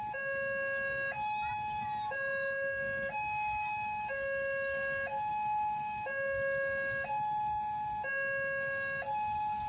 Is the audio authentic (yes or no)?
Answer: yes